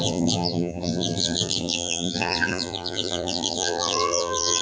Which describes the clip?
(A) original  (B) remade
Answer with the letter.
B